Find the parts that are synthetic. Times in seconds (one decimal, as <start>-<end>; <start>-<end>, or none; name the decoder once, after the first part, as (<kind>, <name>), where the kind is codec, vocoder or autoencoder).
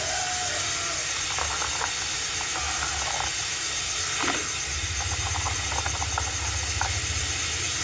none